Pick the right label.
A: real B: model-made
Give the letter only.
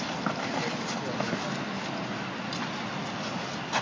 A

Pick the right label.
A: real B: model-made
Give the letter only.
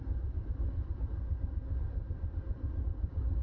B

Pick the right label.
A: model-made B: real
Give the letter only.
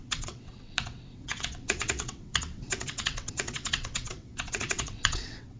A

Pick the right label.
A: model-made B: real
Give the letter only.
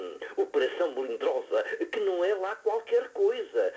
B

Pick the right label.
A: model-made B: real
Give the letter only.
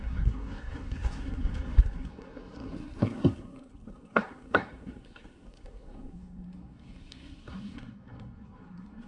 A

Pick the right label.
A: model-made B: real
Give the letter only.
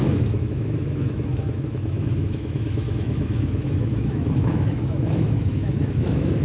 A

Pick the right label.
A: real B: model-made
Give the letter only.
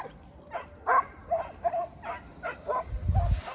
A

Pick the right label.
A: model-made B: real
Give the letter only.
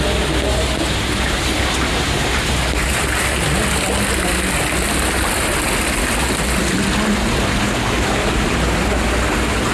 B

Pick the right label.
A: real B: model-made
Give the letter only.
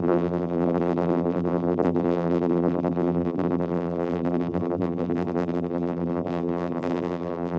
B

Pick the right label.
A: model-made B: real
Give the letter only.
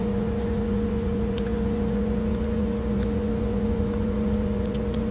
A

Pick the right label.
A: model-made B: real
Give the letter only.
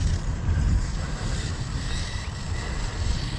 B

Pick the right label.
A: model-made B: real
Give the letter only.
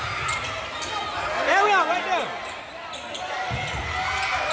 B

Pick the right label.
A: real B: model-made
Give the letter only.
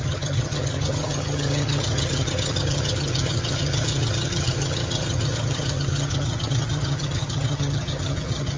B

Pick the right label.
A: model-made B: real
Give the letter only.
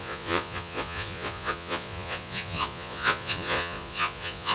A